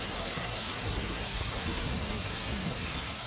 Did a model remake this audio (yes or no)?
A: yes